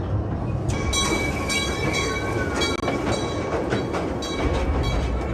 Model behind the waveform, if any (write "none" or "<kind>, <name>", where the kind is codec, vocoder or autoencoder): none